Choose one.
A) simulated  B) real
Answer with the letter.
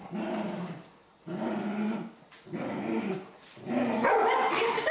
B